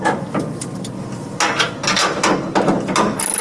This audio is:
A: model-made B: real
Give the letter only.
B